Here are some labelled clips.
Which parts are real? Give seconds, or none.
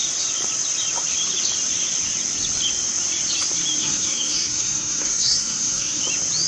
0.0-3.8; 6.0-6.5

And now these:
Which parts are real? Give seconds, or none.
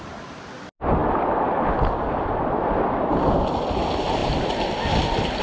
0.0-5.4